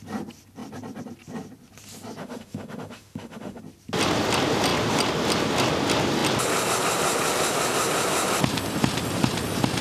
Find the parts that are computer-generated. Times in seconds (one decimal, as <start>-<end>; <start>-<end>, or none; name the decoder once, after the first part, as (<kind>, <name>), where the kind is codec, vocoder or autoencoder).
2.2-3.6 (autoencoder, DAC-VAE)